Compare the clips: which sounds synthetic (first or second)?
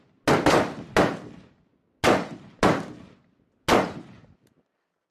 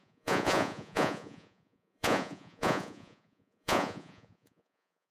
second